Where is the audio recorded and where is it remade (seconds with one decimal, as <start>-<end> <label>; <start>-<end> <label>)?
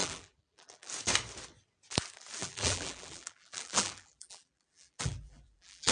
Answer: 0.0-0.9 remade; 0.9-2.4 recorded; 2.4-5.9 remade